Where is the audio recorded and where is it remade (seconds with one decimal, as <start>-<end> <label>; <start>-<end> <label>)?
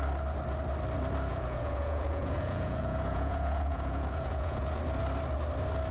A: 0.0-1.3 recorded; 1.3-4.8 remade; 4.8-5.9 recorded